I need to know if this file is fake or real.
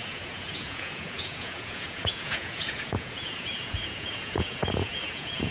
fake